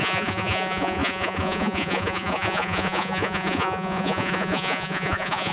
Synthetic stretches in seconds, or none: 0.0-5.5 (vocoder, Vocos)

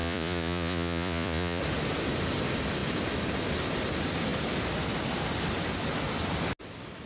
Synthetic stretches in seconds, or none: 0.0-1.6 (vocoder, Vocos)

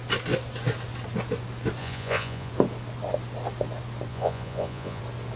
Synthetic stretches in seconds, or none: 1.8-2.5 (vocoder, Vocos); 4.1-5.0

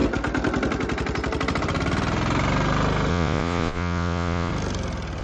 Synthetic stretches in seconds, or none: 3.1-4.5 (vocoder, Vocos)